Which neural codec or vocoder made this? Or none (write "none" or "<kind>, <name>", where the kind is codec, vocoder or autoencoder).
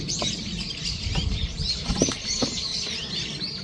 none